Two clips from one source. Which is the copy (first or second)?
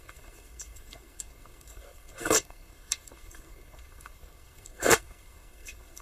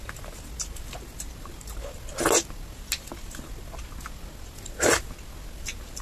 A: first